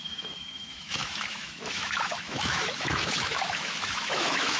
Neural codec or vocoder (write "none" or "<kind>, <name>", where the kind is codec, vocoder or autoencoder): autoencoder, DAC-VAE